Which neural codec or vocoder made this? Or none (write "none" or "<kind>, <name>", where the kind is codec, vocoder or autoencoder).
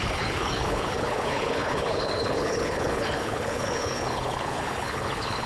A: codec, HILCodec